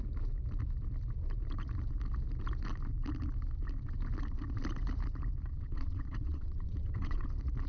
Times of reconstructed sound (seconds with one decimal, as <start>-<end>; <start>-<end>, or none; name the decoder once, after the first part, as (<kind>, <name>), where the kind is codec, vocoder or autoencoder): 5.5-7.3 (vocoder, WaveNeXt)